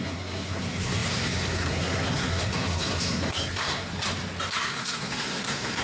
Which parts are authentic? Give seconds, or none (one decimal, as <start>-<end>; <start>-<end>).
3.9-4.5